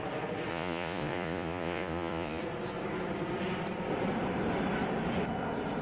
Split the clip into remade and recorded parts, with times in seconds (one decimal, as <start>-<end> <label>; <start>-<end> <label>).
0.0-0.5 recorded; 0.5-2.4 remade; 2.4-5.8 recorded

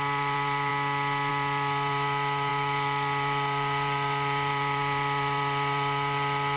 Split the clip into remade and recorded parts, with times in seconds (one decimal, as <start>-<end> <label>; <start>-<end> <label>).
0.0-0.7 remade; 0.7-1.3 recorded; 1.3-6.6 remade

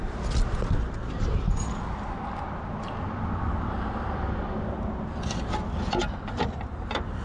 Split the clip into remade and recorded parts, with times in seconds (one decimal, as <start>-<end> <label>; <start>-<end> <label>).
0.0-7.2 recorded

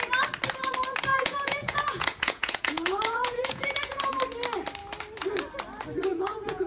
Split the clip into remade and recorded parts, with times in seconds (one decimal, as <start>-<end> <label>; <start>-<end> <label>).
0.0-1.1 recorded; 1.1-4.2 remade; 4.2-6.1 recorded; 6.1-6.7 remade

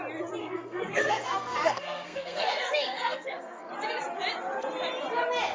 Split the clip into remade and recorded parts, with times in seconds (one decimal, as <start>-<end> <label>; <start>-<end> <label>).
0.0-0.4 recorded; 0.4-3.7 remade; 3.7-5.5 recorded

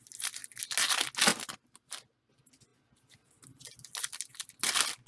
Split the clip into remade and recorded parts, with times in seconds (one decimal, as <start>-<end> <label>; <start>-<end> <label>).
0.0-5.1 recorded

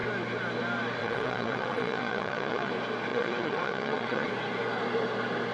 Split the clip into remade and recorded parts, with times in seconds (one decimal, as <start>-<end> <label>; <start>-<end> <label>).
0.0-1.0 recorded; 1.0-2.7 remade; 2.7-3.1 recorded; 3.1-4.3 remade; 4.3-5.5 recorded